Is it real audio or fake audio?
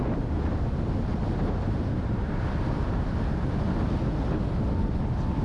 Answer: real